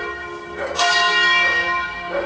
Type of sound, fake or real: fake